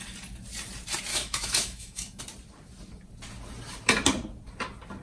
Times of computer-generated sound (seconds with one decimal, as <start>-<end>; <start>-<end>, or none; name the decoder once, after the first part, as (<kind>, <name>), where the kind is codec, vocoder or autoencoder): 1.1-2.2 (autoencoder, DAC-VAE)

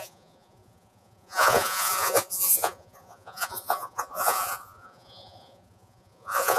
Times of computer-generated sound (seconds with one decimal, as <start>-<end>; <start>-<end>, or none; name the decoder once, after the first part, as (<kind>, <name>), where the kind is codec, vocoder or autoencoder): 0.0-6.6 (vocoder, Vocos)

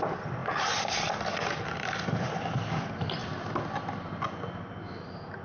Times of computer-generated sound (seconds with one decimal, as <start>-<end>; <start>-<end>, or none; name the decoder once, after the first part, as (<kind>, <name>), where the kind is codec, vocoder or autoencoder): none

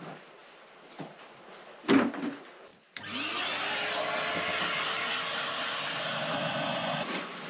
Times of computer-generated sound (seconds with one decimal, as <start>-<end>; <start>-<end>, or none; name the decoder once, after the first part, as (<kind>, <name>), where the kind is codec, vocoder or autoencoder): 6.7-7.5 (vocoder, Vocos)

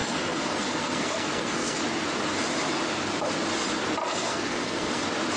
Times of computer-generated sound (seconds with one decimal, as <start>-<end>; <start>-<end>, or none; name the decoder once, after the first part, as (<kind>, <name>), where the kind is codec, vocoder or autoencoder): 0.0-1.8 (codec, SNAC); 4.0-5.0

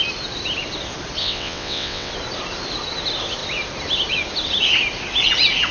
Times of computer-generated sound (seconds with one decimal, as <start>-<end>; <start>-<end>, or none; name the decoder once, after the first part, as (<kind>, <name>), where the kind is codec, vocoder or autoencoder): 1.2-2.1 (vocoder, WaveNeXt)

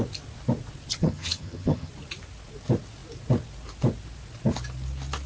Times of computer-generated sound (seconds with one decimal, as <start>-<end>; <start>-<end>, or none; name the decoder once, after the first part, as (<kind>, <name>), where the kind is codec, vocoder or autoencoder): 1.0-1.9 (vocoder, HiFi-GAN)

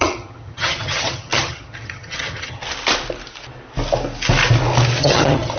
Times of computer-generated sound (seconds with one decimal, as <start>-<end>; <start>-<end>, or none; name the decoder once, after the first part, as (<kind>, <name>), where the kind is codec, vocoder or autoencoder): 0.0-2.6 (vocoder, HiFi-GAN); 5.0-5.6